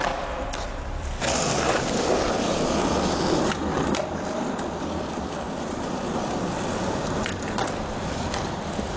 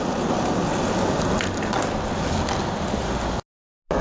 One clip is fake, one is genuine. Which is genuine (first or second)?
second